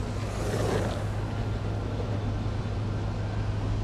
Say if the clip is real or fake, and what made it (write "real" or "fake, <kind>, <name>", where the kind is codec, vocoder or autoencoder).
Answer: real